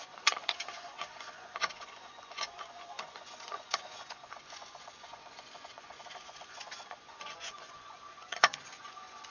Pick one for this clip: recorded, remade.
remade